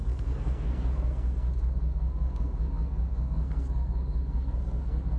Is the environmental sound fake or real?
fake